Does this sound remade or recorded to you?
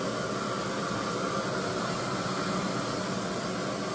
recorded